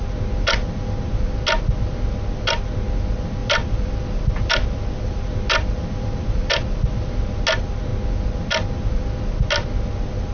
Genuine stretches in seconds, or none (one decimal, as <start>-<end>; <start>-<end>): 0.0-3.4; 7.4-10.3